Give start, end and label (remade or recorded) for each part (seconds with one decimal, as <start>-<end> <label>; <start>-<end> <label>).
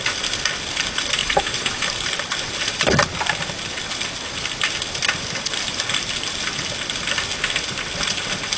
0.0-1.2 recorded; 1.2-1.9 remade; 1.9-8.6 recorded